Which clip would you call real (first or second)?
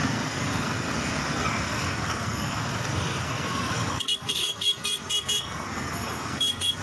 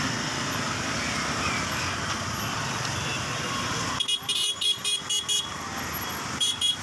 second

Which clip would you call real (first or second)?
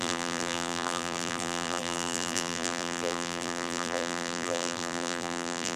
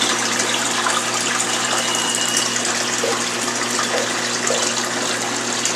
second